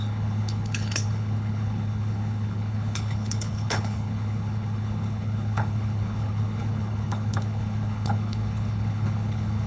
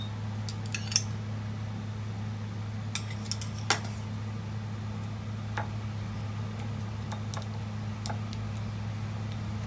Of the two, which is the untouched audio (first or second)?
second